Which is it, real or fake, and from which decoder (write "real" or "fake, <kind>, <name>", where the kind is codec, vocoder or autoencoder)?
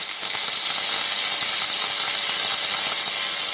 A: real